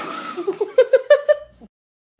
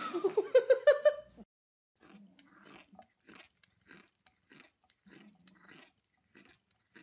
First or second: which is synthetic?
first